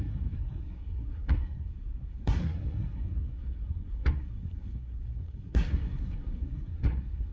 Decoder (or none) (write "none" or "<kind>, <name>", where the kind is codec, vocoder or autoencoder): codec, SNAC